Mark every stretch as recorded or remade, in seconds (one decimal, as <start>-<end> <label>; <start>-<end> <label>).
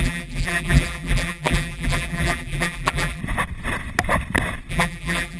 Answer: 0.0-3.2 remade; 3.2-4.7 recorded; 4.7-5.4 remade